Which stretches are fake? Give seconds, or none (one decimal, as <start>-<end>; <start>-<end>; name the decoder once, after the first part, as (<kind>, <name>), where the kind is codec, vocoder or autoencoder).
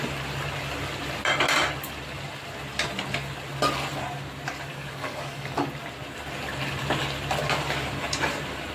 4.7-5.7 (codec, DAC)